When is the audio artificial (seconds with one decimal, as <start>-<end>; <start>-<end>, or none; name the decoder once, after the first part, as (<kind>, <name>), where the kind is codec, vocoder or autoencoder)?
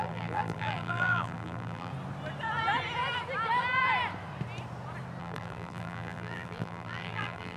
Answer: 0.0-1.9 (vocoder, BigVGAN v2); 5.2-7.6